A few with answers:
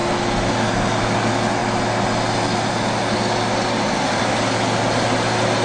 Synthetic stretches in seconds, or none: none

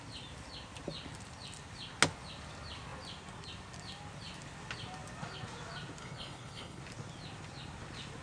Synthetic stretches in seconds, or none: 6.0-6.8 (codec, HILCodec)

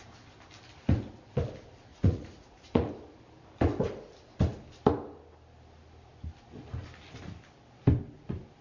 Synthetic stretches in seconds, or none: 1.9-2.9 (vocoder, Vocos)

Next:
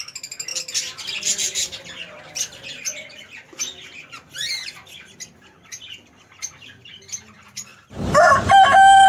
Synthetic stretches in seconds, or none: none